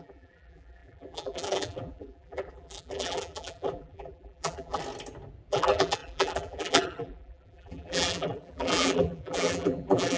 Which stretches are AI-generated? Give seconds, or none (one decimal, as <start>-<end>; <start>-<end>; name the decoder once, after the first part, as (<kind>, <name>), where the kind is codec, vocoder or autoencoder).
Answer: 0.0-4.8 (vocoder, BigVGAN v2); 5.5-10.2